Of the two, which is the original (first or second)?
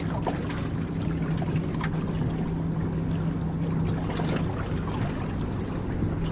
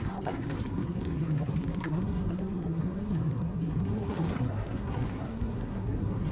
first